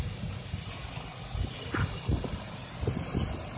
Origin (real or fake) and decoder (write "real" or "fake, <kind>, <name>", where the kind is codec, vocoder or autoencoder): real